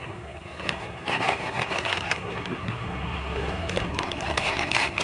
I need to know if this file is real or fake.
fake